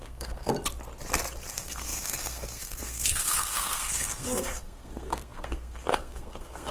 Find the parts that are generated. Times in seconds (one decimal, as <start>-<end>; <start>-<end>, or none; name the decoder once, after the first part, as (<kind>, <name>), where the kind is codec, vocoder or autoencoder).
0.0-0.5 (codec, SNAC); 1.5-6.7